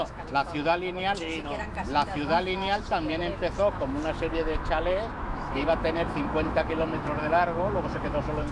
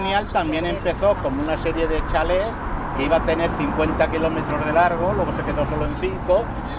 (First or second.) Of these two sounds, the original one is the second